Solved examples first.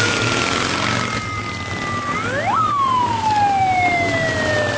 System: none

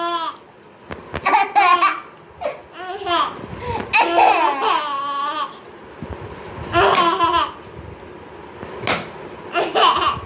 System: none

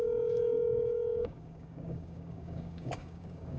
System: codec, DAC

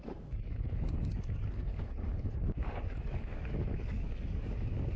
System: codec, DAC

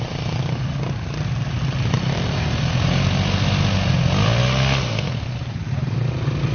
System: none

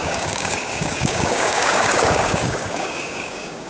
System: codec, DAC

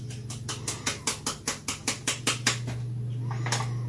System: none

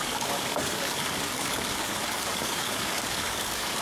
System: codec, DAC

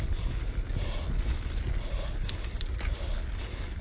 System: none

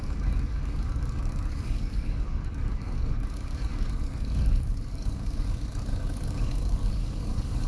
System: codec, DAC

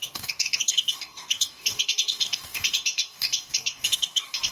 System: codec, DAC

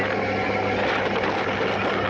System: none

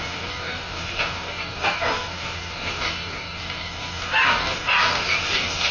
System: codec, DAC